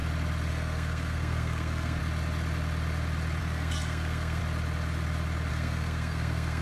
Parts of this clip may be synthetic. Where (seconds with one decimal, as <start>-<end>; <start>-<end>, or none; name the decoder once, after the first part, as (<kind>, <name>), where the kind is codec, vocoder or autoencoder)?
0.5-2.0 (codec, SNAC); 3.4-4.4; 5.5-6.6